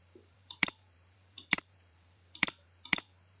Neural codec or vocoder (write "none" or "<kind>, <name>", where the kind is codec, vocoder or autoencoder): vocoder, BigVGAN v2